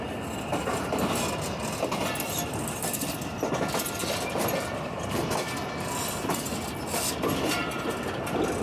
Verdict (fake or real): real